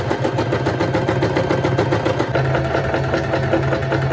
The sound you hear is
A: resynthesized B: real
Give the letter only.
B